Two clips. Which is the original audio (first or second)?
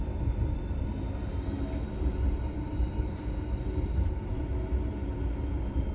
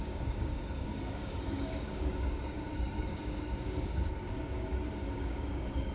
first